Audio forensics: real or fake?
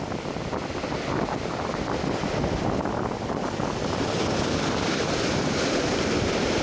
real